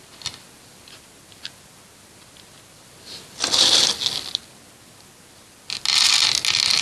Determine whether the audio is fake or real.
real